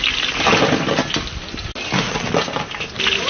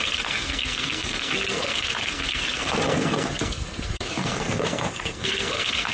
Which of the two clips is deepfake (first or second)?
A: second